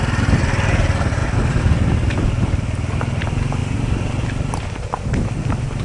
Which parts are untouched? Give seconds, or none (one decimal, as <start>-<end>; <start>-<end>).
0.0-1.2; 3.2-5.8